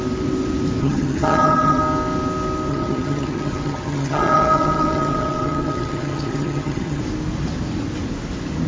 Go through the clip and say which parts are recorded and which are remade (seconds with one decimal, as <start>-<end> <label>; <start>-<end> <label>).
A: 0.0-0.8 recorded; 0.8-1.8 remade; 1.8-2.7 recorded; 2.7-7.0 remade; 7.0-8.7 recorded